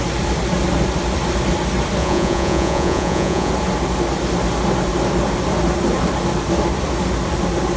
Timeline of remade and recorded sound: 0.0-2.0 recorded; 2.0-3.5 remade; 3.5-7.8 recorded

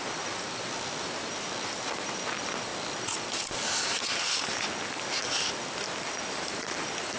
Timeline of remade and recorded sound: 0.0-7.2 recorded